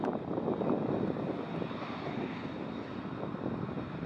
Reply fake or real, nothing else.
real